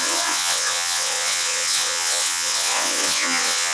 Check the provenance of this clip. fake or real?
fake